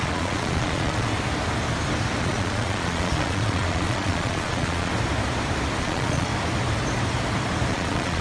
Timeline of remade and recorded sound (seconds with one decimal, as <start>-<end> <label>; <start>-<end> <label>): 0.0-1.1 remade; 1.1-2.2 recorded; 2.2-4.9 remade; 4.9-5.8 recorded; 5.8-6.3 remade; 6.3-7.7 recorded; 7.7-8.2 remade